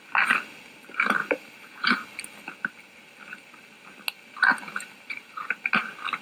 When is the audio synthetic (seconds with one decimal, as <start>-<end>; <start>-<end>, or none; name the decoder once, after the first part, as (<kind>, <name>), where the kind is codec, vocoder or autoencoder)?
1.2-2.2 (vocoder, BigVGAN v2); 4.5-5.5